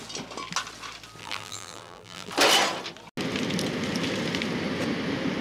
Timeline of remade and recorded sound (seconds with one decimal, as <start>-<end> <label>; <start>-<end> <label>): 0.0-1.2 recorded; 1.2-2.3 remade; 2.3-5.4 recorded